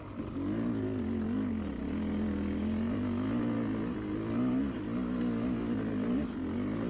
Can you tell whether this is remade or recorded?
recorded